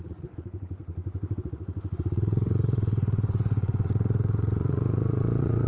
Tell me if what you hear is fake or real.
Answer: fake